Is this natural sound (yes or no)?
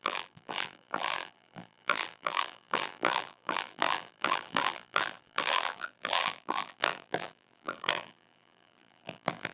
no